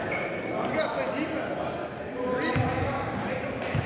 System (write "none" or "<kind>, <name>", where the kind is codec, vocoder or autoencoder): none